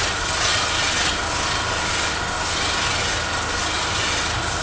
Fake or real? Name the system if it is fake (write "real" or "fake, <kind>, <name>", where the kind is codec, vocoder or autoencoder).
real